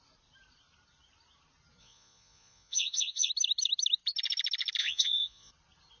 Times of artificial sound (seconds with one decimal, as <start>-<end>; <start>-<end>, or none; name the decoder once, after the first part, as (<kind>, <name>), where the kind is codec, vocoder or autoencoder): 1.8-3.3 (vocoder, Vocos); 4.8-5.5